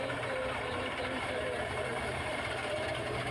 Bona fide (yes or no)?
no